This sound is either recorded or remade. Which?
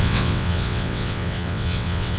remade